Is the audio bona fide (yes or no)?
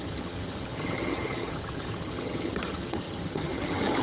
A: no